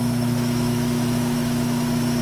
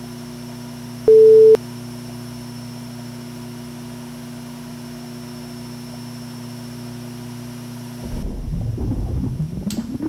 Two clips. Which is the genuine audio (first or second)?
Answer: second